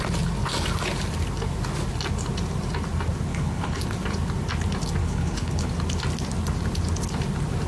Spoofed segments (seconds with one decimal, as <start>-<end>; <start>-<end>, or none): 3.3-3.8; 5.0-5.7